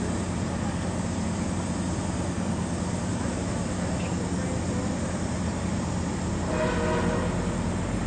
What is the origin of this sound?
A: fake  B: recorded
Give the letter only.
B